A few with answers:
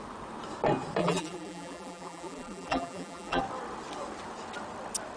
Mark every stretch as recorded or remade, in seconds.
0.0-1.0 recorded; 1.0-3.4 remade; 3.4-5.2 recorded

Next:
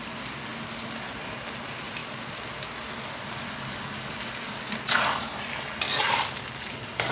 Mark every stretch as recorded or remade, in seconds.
0.0-7.1 recorded